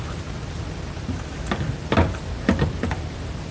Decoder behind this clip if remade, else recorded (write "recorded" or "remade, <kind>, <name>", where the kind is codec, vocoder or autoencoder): recorded